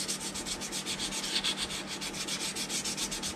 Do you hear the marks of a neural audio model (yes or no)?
no